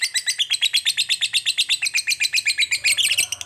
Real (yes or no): yes